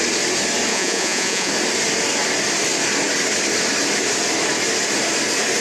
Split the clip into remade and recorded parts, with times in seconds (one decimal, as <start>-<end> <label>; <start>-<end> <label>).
0.0-0.7 recorded; 0.7-1.5 remade; 1.5-5.6 recorded